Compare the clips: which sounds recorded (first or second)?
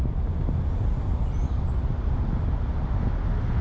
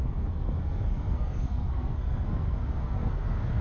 first